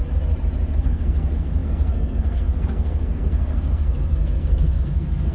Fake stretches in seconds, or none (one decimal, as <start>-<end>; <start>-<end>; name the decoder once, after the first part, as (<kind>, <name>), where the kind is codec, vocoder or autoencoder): 0.8-5.3 (codec, SNAC)